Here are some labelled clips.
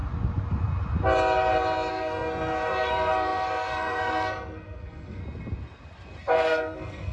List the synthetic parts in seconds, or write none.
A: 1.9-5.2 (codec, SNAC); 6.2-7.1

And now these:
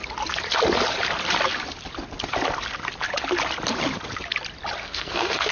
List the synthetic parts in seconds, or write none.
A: 4.8-5.5 (codec, SNAC)

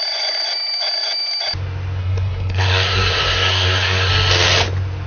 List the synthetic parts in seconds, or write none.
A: 2.0-4.1 (codec, SNAC)

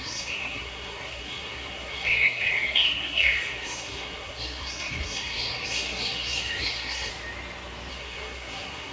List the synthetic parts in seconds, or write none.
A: 0.0-7.1 (codec, SNAC); 7.9-8.9

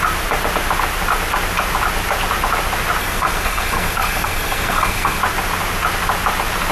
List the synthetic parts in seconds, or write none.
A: 3.0-5.2 (codec, SNAC)

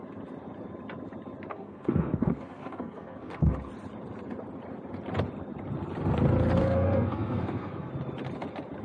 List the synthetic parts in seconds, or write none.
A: 1.5-3.7 (codec, SNAC); 6.6-7.9